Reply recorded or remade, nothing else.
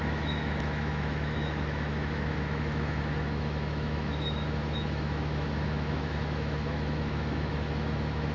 remade